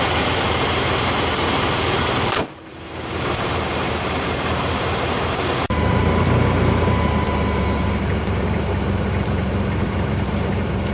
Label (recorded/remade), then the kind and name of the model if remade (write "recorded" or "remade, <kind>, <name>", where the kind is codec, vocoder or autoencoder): remade, vocoder, BigVGAN v2